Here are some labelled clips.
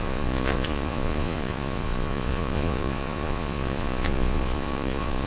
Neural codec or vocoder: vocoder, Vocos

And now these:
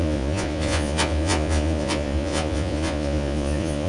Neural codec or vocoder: vocoder, Vocos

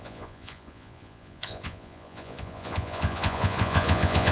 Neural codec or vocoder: vocoder, Vocos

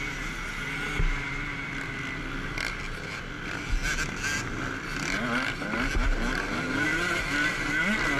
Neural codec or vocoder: none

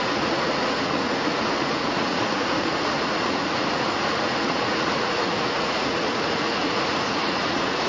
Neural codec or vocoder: vocoder, Vocos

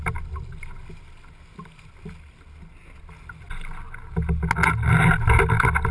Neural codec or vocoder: none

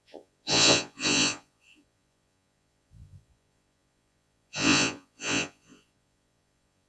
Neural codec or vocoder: vocoder, Vocos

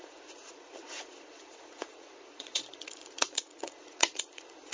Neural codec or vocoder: vocoder, Vocos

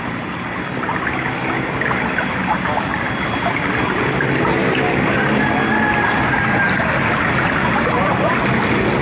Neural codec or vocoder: none